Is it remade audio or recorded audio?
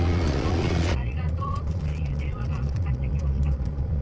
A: remade